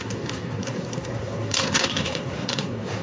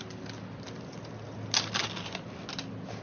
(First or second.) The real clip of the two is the second